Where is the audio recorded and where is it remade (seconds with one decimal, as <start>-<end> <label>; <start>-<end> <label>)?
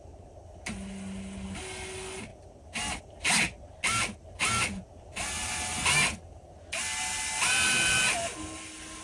0.0-9.0 recorded